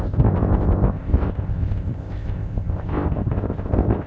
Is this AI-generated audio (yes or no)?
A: yes